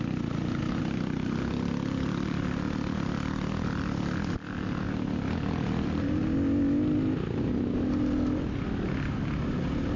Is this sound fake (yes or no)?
no